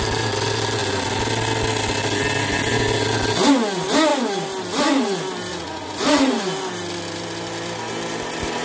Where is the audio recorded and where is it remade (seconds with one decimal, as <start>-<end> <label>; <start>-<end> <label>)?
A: 0.0-5.5 recorded; 5.5-6.4 remade; 6.4-8.6 recorded